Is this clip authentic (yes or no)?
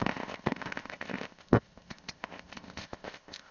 no